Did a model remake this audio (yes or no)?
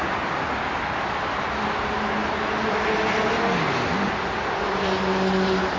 no